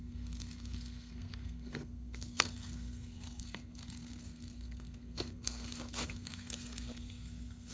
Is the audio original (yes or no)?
no